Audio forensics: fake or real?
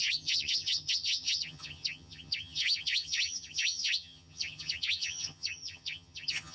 fake